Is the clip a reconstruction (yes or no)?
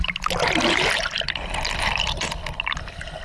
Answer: no